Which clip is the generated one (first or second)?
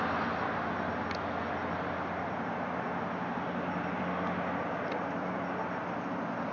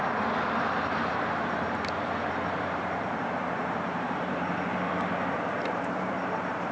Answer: second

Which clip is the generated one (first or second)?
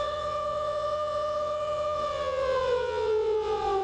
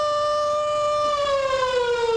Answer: first